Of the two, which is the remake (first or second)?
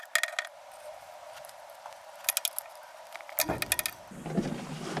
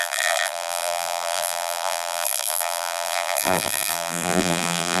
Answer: second